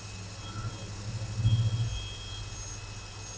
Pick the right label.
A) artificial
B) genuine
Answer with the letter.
B